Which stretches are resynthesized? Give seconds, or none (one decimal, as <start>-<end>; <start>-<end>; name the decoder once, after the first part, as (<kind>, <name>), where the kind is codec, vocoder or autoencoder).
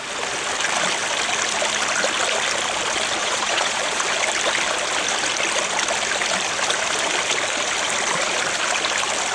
3.2-4.0 (vocoder, Vocos)